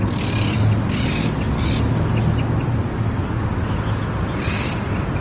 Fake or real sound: real